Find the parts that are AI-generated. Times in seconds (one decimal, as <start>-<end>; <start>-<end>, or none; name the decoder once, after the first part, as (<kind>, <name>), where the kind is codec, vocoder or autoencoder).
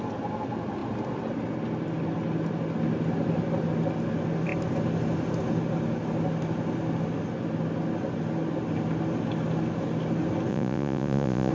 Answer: 10.5-11.5 (vocoder, Vocos)